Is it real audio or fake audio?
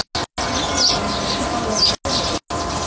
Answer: real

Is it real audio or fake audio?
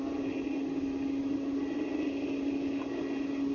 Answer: real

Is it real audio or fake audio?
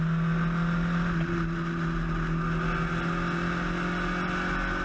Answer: real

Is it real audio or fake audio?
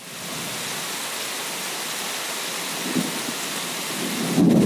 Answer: real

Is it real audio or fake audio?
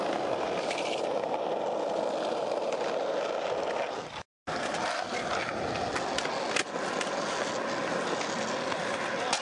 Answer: real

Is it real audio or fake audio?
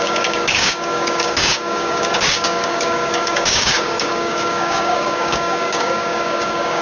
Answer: fake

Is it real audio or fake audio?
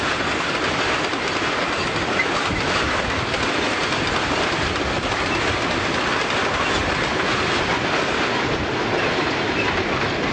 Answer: real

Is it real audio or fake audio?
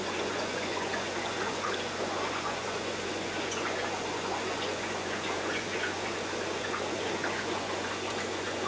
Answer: fake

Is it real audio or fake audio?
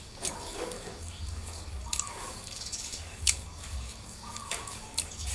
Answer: fake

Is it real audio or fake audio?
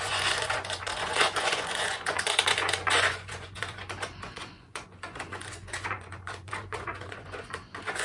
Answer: fake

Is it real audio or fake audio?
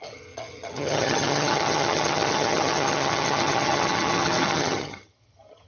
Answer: fake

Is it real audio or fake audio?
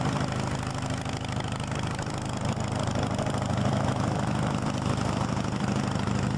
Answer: fake